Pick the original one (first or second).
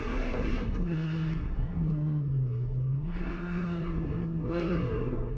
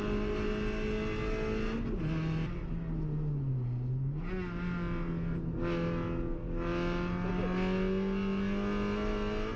second